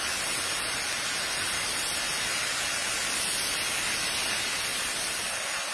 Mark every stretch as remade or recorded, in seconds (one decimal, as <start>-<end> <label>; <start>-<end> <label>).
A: 0.0-5.7 recorded